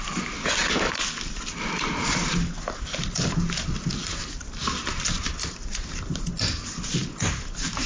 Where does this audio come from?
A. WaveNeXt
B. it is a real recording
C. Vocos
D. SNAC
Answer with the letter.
B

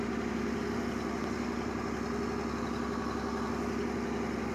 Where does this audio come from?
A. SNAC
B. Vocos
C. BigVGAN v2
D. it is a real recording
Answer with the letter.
D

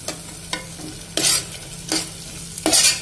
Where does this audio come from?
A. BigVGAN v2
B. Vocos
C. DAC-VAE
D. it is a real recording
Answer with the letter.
D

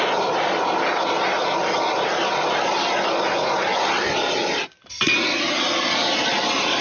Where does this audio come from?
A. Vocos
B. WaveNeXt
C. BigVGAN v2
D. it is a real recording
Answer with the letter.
D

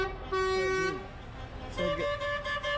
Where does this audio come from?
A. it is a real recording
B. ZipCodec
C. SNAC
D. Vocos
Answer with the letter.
A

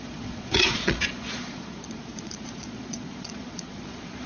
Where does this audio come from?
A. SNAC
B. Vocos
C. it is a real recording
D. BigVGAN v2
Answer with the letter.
B